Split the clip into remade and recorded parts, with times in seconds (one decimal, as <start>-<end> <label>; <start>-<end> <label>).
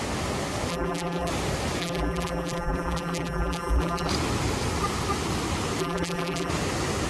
0.0-0.7 recorded; 0.7-1.3 remade; 1.3-1.8 recorded; 1.8-4.1 remade; 4.1-5.8 recorded; 5.8-6.5 remade; 6.5-7.1 recorded